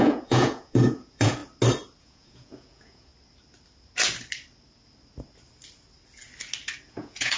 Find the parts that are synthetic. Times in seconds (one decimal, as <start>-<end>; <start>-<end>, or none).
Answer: 0.0-1.4; 2.0-3.1; 6.8-7.4